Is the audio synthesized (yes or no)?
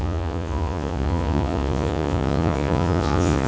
yes